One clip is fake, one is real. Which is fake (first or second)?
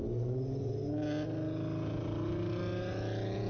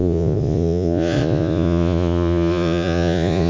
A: second